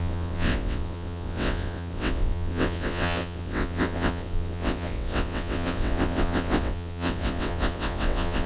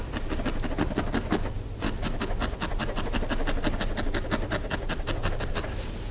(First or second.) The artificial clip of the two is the first